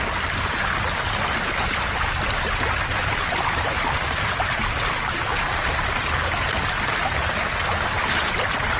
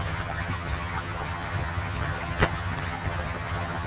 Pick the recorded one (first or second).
first